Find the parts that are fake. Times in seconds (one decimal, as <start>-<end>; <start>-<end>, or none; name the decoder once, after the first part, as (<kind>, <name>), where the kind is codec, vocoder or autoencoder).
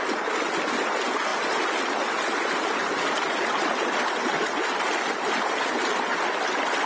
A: 0.0-6.9 (vocoder, BigVGAN v2)